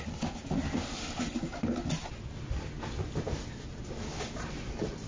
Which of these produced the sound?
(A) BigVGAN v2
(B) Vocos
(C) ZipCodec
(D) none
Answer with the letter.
D